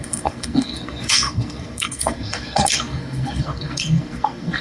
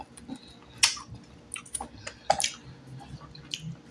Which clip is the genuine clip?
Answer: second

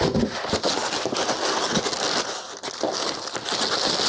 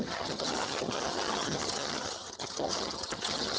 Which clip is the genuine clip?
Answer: first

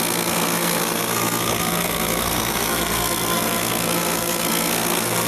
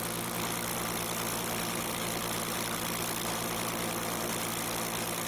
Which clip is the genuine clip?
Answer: second